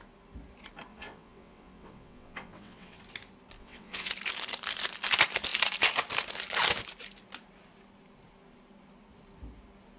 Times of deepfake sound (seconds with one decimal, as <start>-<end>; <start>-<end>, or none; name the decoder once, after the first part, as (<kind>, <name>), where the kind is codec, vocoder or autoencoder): 0.9-3.0 (vocoder, WaveNeXt); 3.6-4.1